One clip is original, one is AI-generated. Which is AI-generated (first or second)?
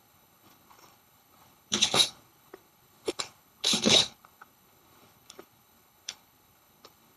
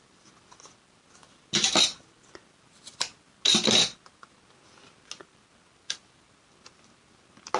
first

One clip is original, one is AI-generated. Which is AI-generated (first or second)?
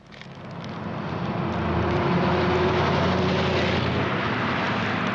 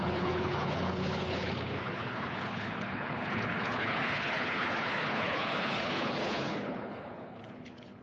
second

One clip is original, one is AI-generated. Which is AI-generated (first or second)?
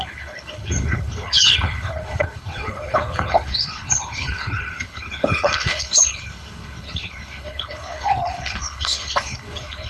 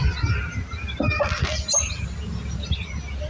first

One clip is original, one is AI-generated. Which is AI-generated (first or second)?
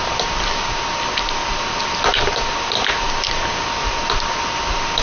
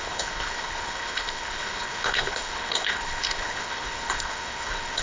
second